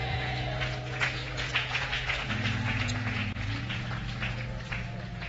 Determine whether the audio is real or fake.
fake